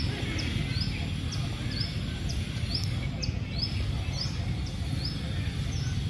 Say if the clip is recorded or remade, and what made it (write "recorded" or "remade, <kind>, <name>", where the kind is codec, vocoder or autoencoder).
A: recorded